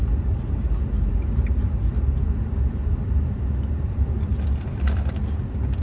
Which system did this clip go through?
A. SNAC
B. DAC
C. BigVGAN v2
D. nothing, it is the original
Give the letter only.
D